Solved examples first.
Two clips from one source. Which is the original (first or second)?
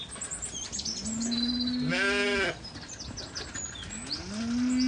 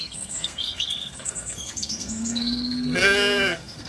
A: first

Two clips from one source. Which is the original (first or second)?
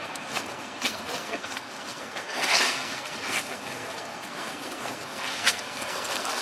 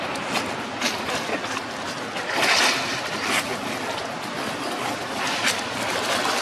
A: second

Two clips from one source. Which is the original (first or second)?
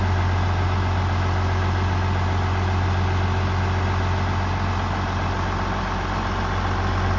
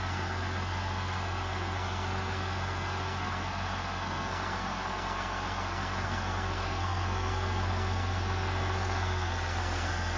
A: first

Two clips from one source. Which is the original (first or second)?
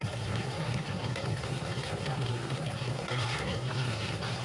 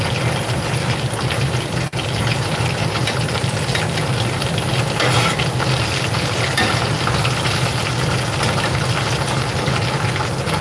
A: second